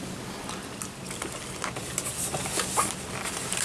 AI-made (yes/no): no